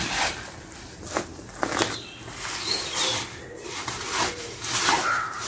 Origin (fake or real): real